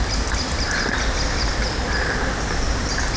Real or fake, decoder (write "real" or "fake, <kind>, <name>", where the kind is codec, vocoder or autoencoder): real